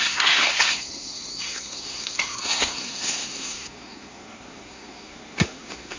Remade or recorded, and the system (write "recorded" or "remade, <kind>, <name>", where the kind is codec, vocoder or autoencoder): remade, codec, SNAC